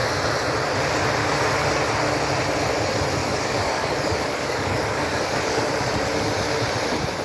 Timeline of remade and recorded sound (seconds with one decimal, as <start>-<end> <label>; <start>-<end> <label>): 0.0-3.2 recorded; 3.2-5.7 remade; 5.7-7.2 recorded